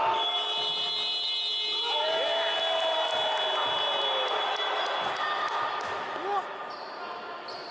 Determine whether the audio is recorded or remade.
recorded